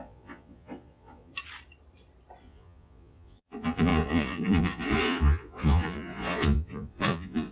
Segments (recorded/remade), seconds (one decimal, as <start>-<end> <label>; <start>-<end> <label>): 0.0-1.3 remade; 1.3-2.4 recorded; 2.4-7.5 remade